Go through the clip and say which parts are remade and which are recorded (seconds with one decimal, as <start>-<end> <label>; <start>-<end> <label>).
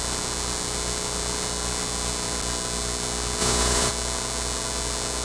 0.0-3.4 recorded; 3.4-3.9 remade; 3.9-5.2 recorded